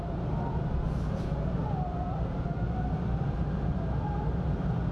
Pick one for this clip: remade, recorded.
remade